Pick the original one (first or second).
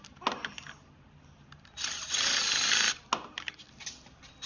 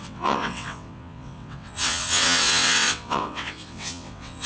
first